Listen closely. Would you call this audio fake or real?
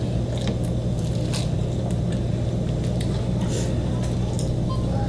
real